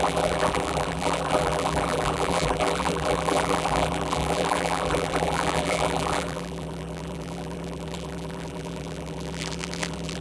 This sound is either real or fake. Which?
fake